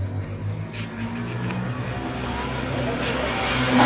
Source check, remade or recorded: recorded